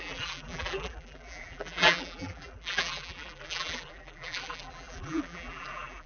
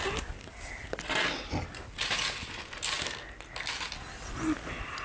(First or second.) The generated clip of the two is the first